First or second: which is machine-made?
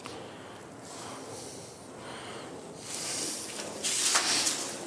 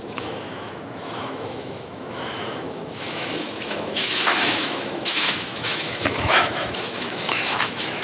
second